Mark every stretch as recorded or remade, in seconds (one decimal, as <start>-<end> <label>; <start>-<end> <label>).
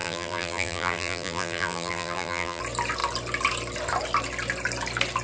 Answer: 0.0-2.6 remade; 2.6-5.2 recorded